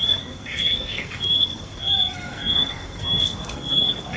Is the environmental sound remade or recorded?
remade